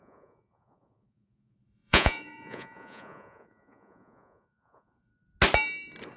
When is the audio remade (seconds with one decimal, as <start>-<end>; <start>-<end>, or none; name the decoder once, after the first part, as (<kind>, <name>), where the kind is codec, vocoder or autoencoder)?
0.0-5.1 (vocoder, Vocos)

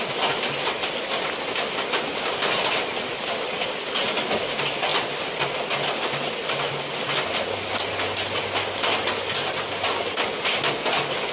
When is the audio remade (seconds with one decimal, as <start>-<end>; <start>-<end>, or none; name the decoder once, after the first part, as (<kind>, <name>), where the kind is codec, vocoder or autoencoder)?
none

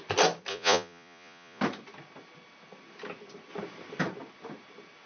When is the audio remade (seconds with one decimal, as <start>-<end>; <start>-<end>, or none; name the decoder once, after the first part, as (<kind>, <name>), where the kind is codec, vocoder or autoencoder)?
0.5-1.6 (vocoder, Vocos)

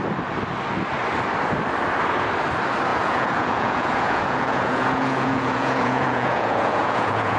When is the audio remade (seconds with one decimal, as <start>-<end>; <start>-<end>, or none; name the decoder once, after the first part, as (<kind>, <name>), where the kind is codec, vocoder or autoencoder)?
2.9-7.4 (vocoder, Vocos)